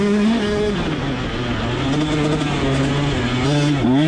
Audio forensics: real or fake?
real